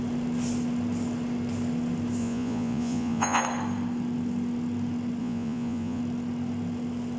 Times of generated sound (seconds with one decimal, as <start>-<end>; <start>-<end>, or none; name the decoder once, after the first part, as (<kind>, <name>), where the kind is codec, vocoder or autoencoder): 2.2-3.4 (vocoder, Vocos); 5.2-6.0